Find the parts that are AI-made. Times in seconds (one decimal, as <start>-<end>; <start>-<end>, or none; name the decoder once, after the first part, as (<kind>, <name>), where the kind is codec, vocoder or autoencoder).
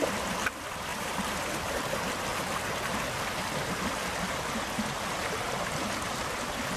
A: 0.9-1.5 (vocoder, BigVGAN v2)